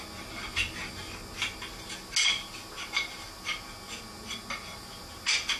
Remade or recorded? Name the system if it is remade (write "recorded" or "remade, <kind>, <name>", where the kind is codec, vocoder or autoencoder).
recorded